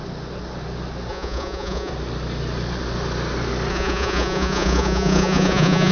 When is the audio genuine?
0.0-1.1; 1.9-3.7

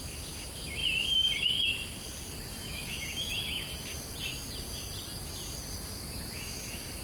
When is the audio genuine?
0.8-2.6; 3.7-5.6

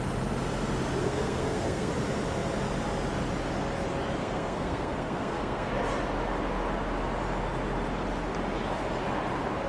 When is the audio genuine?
0.0-1.0; 1.9-4.2; 5.7-9.7